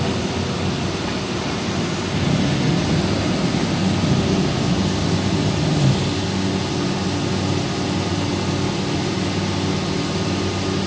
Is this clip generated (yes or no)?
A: no